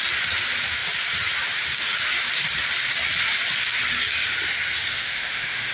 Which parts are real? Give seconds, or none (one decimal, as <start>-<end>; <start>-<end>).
0.0-4.9